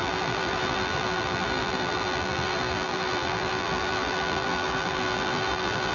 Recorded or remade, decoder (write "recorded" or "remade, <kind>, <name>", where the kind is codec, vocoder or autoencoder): remade, vocoder, BigVGAN v2